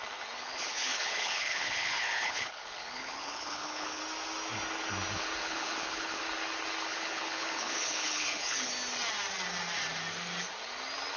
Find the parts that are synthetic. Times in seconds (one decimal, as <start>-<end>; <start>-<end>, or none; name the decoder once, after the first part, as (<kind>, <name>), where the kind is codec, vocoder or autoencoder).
0.4-4.0 (codec, HILCodec); 5.4-6.2; 6.9-8.7